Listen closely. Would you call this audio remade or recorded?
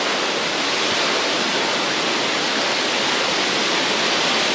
recorded